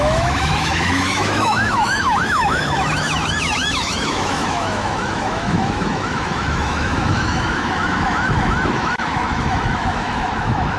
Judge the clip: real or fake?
fake